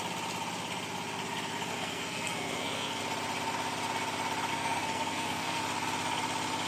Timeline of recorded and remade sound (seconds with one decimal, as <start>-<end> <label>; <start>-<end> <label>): 0.0-1.7 recorded; 1.7-3.0 remade; 3.0-4.5 recorded; 4.5-5.6 remade; 5.6-6.7 recorded